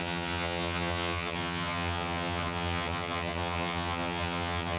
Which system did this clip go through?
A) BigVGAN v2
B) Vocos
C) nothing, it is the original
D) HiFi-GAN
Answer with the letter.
D